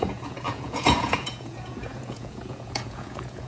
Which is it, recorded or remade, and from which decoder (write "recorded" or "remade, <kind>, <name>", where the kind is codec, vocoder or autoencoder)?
remade, vocoder, Vocos